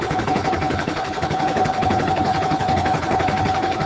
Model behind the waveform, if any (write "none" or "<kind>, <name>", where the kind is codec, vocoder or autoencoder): codec, HILCodec